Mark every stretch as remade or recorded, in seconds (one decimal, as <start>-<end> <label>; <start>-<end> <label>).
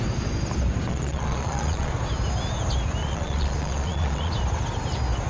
0.0-0.9 recorded; 0.9-1.9 remade; 1.9-3.0 recorded; 3.0-4.3 remade; 4.3-5.3 recorded